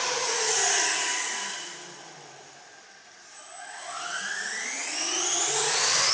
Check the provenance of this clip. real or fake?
real